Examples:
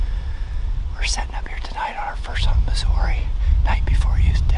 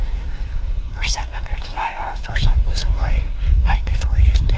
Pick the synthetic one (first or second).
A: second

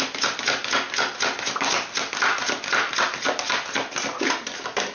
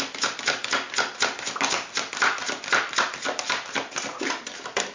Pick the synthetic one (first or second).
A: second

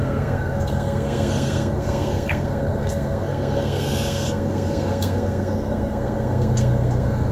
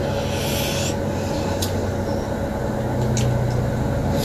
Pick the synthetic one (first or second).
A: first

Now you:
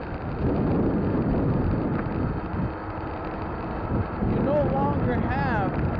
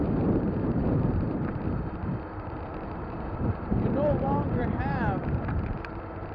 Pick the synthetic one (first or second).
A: second